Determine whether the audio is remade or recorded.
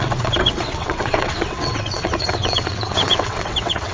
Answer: remade